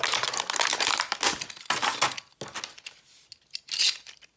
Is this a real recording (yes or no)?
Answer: yes